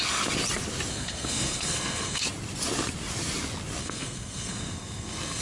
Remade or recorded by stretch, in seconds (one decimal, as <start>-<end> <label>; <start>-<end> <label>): 0.0-0.9 recorded; 0.9-2.2 remade; 2.2-3.8 recorded; 3.8-5.4 remade